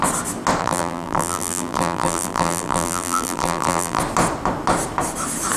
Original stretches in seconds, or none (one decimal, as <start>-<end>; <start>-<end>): 0.0-0.6; 4.0-5.6